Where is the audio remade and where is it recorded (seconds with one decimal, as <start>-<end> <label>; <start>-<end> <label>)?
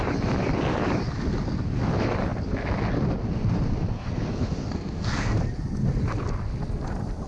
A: 0.0-3.8 recorded; 3.8-5.4 remade; 5.4-7.3 recorded